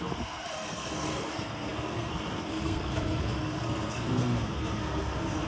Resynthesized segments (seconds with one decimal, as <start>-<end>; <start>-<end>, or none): 0.0-5.5